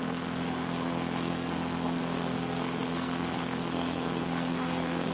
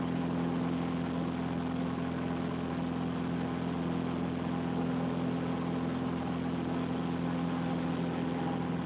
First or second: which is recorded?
second